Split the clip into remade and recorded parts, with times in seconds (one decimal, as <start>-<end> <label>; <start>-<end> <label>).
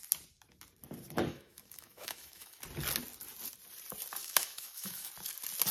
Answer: 0.0-1.3 recorded; 1.3-2.6 remade; 2.6-4.2 recorded; 4.2-5.1 remade; 5.1-5.7 recorded